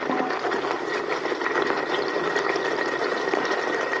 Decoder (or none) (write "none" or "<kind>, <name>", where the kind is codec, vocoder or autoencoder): none